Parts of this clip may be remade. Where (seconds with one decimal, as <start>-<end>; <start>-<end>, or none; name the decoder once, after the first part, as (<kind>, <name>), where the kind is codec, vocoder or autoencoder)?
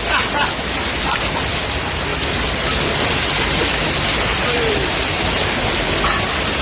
none